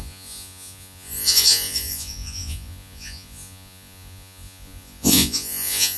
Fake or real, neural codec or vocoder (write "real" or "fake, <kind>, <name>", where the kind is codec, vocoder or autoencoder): fake, vocoder, Vocos